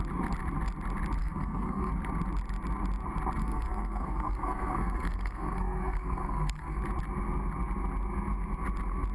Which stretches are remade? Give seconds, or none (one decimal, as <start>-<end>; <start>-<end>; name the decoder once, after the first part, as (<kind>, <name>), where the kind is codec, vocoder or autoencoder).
1.2-1.9 (codec, SNAC); 3.4-6.8